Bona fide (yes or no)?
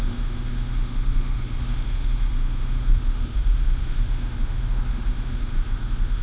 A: no